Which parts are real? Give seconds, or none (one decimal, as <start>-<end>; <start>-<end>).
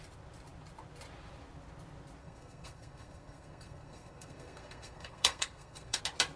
0.0-2.2; 6.0-6.4